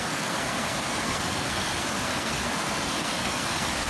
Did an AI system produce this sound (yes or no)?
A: yes